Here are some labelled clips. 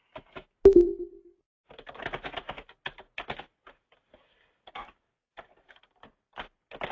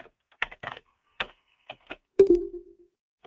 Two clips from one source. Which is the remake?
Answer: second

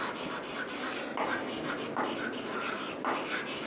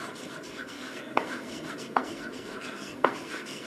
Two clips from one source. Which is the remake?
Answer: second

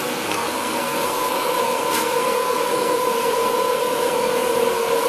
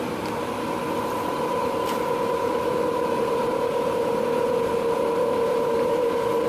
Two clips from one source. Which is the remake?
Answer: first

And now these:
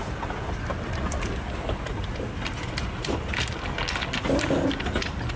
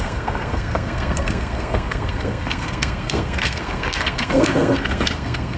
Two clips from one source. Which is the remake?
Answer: second